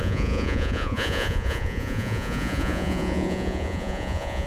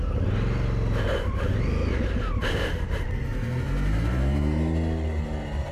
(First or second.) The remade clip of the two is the first